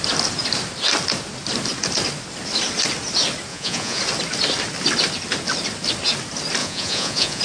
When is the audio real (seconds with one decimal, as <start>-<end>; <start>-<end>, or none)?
0.0-3.5; 4.0-6.6